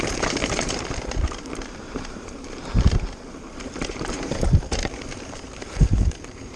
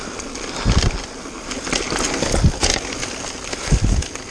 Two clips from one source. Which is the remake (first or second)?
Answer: first